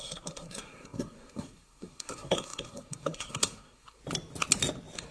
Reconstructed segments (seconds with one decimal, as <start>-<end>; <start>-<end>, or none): 0.0-4.0